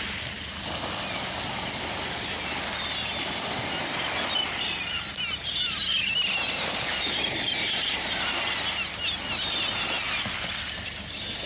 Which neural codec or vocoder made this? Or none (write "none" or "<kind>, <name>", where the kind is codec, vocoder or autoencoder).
none